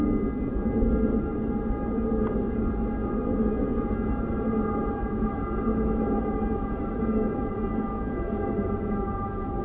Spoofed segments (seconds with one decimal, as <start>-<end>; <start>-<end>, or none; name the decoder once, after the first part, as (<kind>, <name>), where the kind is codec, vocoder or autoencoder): none